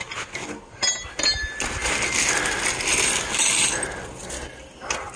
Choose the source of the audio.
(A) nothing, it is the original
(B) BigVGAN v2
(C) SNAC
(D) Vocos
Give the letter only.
A